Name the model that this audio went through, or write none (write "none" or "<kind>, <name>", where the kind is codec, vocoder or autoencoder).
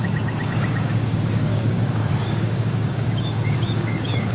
codec, DAC